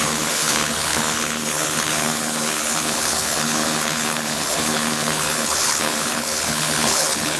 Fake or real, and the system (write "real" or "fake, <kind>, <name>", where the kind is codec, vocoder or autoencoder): fake, codec, HILCodec